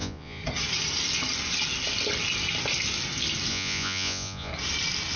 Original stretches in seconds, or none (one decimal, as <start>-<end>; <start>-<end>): 0.4-3.5; 4.5-5.2